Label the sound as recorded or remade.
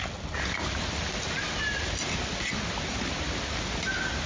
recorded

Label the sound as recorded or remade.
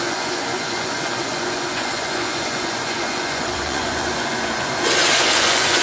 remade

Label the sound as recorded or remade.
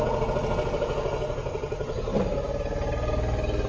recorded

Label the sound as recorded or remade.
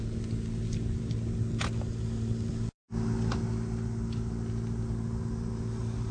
recorded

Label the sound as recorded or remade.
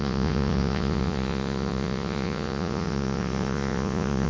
remade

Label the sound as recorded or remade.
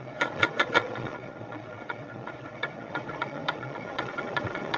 remade